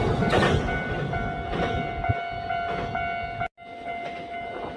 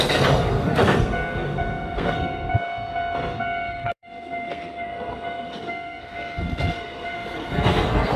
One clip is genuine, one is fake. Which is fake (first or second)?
second